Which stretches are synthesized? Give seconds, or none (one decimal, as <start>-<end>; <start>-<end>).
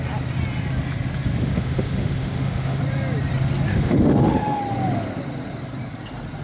1.4-2.8; 3.7-4.6